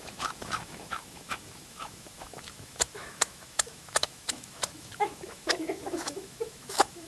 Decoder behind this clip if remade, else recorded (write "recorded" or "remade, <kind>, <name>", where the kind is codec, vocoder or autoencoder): remade, autoencoder, DAC-VAE